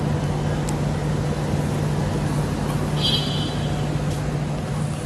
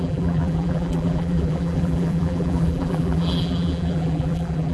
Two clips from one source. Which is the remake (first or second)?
second